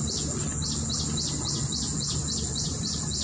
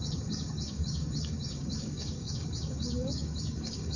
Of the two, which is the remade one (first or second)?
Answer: second